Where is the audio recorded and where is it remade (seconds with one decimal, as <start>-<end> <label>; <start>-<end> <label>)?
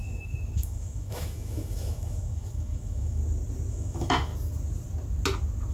0.0-3.2 remade; 3.2-3.7 recorded; 3.7-4.3 remade; 4.3-5.7 recorded